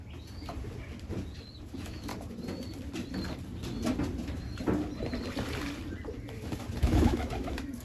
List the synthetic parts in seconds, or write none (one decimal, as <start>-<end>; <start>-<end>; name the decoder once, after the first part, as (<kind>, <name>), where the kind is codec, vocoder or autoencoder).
1.7-2.1 (autoencoder, DAC-VAE); 6.8-7.8